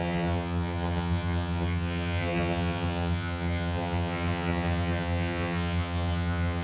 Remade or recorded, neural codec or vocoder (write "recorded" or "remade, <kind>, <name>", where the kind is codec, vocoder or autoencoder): remade, vocoder, HiFi-GAN